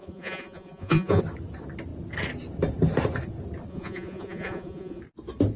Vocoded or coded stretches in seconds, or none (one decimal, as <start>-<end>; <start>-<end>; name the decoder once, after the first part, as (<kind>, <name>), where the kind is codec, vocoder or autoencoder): 0.0-1.2 (vocoder, Vocos); 3.7-5.0